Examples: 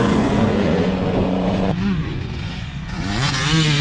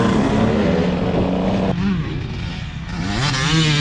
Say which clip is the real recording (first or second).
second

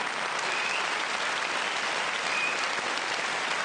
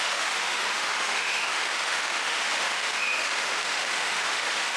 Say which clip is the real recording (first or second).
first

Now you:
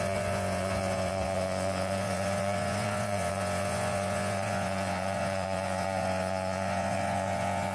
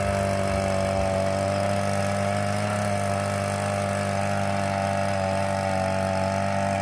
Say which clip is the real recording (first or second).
second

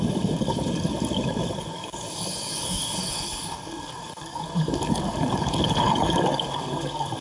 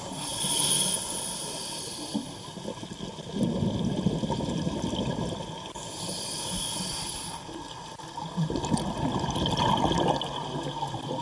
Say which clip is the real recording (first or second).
second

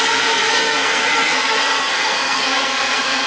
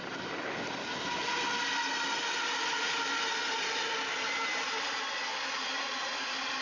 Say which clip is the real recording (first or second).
second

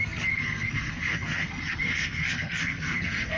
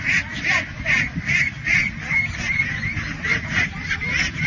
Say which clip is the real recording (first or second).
second